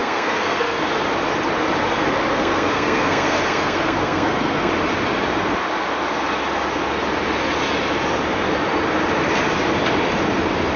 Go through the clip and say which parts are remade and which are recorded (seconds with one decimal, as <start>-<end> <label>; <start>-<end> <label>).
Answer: 0.0-0.8 remade; 0.8-2.3 recorded; 2.3-4.7 remade; 4.7-10.8 recorded

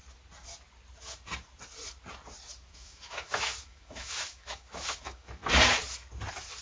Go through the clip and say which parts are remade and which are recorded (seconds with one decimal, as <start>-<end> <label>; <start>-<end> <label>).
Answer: 0.0-2.7 recorded; 2.7-5.4 remade; 5.4-6.6 recorded

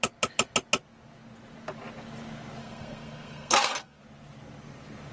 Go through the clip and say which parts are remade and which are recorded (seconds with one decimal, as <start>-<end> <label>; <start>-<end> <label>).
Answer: 0.0-2.6 recorded; 2.6-4.0 remade; 4.0-5.1 recorded

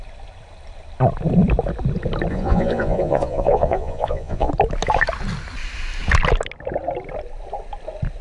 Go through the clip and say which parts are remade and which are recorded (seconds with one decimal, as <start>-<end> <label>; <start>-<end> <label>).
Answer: 0.0-2.3 recorded; 2.3-4.5 remade; 4.5-8.2 recorded

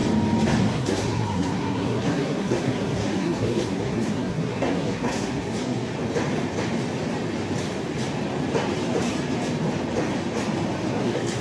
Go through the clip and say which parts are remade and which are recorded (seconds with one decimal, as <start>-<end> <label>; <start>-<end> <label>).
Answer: 0.0-0.6 recorded; 0.6-5.9 remade; 5.9-10.9 recorded; 10.9-11.4 remade